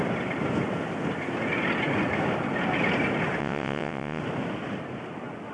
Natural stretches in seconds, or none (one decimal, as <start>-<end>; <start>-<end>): 0.0-3.4; 4.2-5.5